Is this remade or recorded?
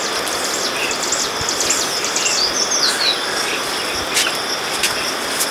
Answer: recorded